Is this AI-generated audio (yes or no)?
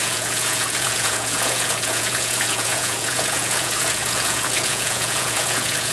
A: yes